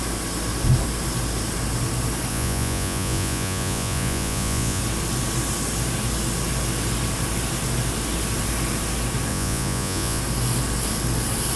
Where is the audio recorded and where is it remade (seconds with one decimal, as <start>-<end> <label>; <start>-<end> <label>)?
0.0-2.3 recorded; 2.3-4.8 remade; 4.8-9.3 recorded; 9.3-10.2 remade; 10.2-11.6 recorded